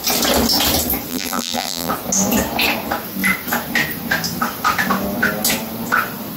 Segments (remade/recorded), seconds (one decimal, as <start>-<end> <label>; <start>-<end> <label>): 0.0-1.1 recorded; 1.1-1.9 remade; 1.9-6.4 recorded